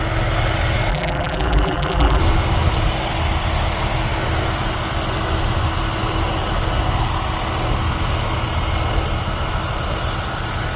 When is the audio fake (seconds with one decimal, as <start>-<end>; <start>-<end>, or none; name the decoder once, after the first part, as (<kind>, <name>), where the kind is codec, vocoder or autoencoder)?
0.9-2.2 (vocoder, BigVGAN v2)